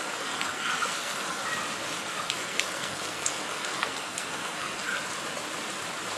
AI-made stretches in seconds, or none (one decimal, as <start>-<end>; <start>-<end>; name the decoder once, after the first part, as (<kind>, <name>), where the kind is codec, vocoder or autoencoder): 0.0-1.4 (codec, SNAC); 2.0-4.9